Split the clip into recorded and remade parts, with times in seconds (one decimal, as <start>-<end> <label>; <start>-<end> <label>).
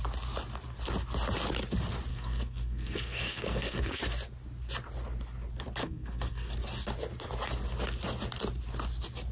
0.0-2.1 recorded; 2.1-4.0 remade; 4.0-5.8 recorded; 5.8-6.5 remade; 6.5-9.3 recorded